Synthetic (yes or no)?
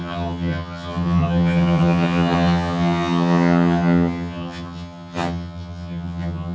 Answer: yes